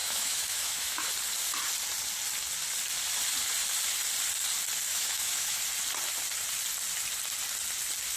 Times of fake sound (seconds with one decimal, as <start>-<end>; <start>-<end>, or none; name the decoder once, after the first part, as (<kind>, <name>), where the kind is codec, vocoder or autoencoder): 0.0-1.1 (autoencoder, DAC-VAE); 4.9-5.6